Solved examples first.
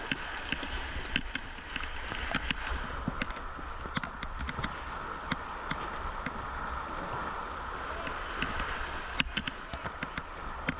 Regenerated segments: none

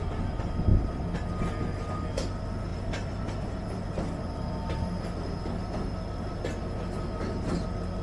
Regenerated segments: none

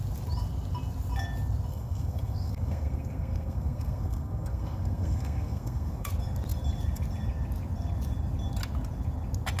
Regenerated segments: 1.7-6.1 (codec, SNAC)

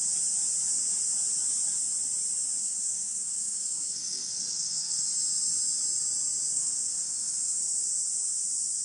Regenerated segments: 2.6-5.0 (codec, SNAC); 6.5-7.6

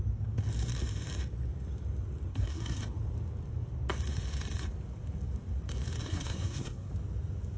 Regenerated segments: 2.3-2.8 (codec, SNAC); 6.0-6.9

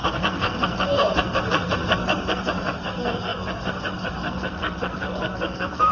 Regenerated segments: 0.0-5.9 (codec, SNAC)